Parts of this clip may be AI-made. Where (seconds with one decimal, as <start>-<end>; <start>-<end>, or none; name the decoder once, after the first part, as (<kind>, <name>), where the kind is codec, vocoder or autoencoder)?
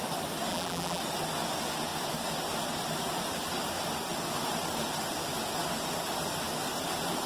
0.5-1.0 (vocoder, BigVGAN v2)